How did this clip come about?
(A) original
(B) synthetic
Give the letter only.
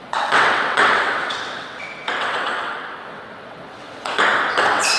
B